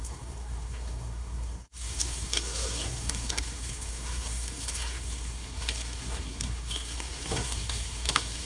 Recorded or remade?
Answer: remade